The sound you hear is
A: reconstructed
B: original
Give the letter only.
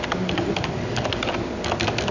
B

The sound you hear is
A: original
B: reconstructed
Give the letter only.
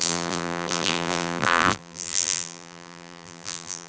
B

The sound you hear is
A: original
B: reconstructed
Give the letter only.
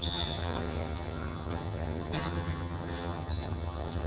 B